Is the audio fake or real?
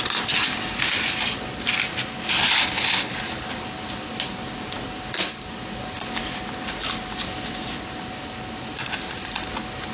real